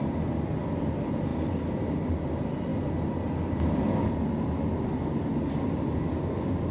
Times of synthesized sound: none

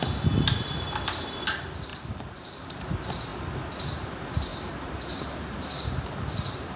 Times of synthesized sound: 1.9-2.8 (vocoder, BigVGAN v2); 4.5-6.8

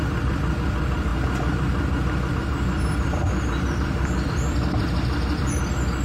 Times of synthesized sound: 0.0-1.1 (vocoder, BigVGAN v2); 2.3-6.0

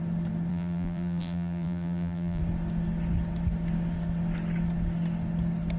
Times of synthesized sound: 0.5-2.4 (vocoder, BigVGAN v2)

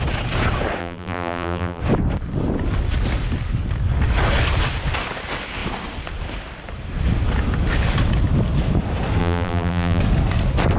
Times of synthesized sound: 0.8-1.8 (vocoder, BigVGAN v2); 9.2-10.0

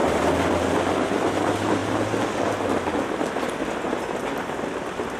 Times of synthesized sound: 0.0-0.5 (vocoder, BigVGAN v2)

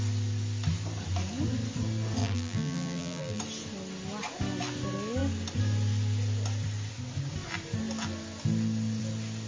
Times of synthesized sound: 2.2-3.4 (vocoder, BigVGAN v2)

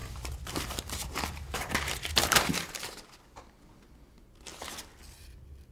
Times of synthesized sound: 0.0-3.4 (vocoder, BigVGAN v2)